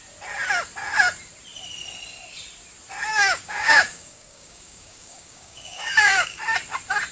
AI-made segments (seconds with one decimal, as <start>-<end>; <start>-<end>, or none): 3.1-6.4